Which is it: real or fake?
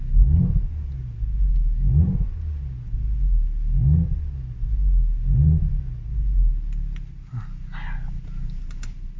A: real